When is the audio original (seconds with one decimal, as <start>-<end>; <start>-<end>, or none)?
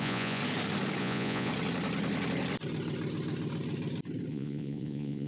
0.4-1.0; 1.5-4.3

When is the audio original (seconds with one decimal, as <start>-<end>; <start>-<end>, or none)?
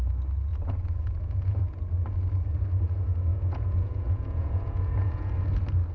0.0-0.5; 1.8-3.3; 5.3-5.9